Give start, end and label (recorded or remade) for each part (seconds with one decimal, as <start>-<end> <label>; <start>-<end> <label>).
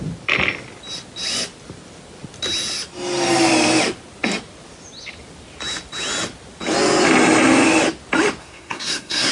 0.0-8.4 recorded; 8.4-9.3 remade